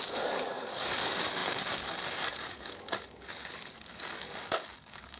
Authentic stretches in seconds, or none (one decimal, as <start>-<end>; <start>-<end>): none